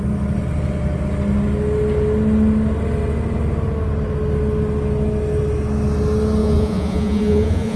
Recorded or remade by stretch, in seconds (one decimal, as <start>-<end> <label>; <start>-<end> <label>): 0.0-6.4 recorded; 6.4-7.8 remade